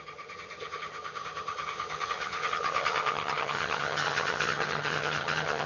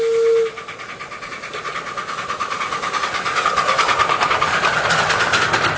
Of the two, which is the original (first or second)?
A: second